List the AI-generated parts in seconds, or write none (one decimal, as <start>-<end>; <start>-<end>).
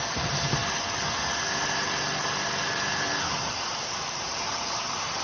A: 0.0-0.6; 3.7-5.2